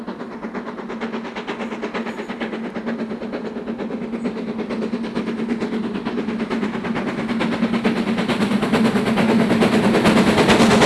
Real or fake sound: real